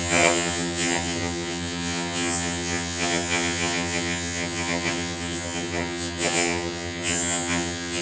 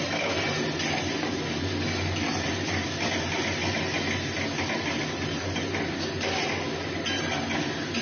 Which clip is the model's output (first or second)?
first